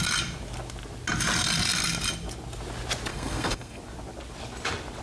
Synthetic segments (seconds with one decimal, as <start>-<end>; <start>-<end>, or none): 3.1-3.8